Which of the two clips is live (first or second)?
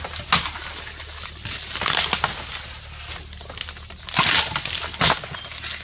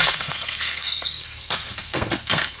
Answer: first